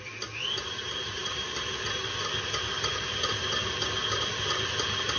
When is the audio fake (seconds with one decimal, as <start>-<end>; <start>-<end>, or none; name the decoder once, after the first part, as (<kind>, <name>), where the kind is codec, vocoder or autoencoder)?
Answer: none